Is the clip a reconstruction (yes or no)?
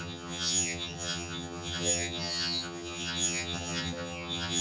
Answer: yes